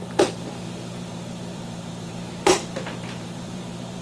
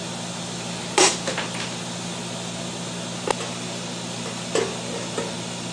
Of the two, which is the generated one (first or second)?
first